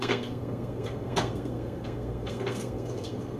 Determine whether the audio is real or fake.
fake